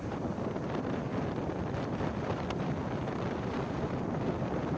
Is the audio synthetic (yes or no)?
yes